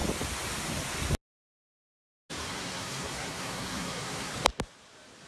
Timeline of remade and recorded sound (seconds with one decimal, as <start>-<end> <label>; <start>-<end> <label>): 0.0-2.4 recorded; 2.4-4.3 remade; 4.3-5.3 recorded